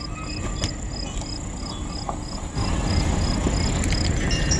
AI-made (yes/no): no